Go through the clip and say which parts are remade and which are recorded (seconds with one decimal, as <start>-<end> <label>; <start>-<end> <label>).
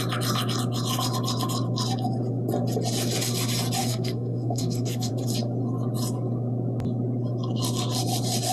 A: 0.0-3.8 recorded; 3.8-5.1 remade; 5.1-8.5 recorded